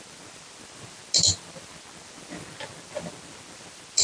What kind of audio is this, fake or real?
real